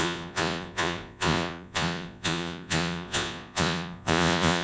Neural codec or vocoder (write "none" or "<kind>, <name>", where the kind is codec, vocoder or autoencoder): vocoder, Vocos